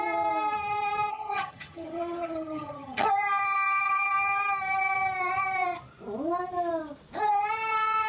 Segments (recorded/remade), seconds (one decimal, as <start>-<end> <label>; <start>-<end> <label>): 0.0-1.1 recorded; 1.1-3.1 remade; 3.1-8.1 recorded